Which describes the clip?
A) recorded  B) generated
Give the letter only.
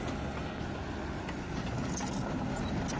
A